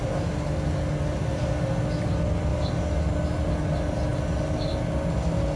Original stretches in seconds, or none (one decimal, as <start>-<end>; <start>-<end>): 0.0-5.6